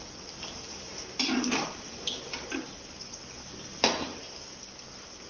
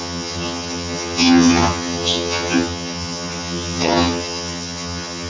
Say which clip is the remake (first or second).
second